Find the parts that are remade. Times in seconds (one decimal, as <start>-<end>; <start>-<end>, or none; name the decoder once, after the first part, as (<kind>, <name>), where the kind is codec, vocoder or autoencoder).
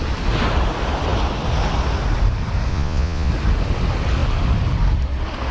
2.7-3.3 (vocoder, Vocos)